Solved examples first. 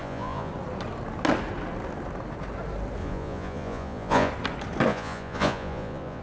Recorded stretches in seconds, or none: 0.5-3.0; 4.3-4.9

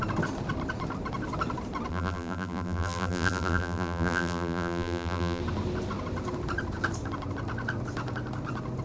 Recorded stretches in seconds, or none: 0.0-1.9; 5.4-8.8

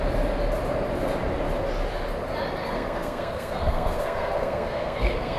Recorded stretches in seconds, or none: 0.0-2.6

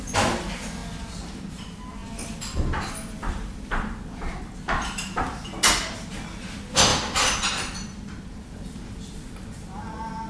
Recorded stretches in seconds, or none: 0.0-2.0; 6.1-6.9; 9.1-10.3